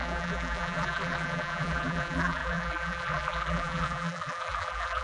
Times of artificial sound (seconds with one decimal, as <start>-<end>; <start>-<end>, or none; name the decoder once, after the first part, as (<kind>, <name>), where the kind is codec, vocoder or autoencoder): 0.0-5.0 (vocoder, BigVGAN v2)